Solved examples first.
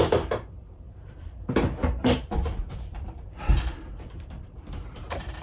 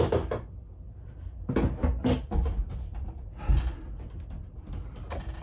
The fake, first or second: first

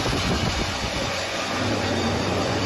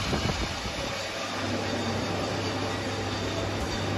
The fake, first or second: first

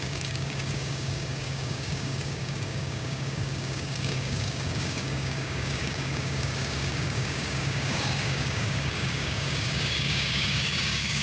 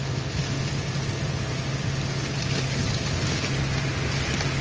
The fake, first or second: first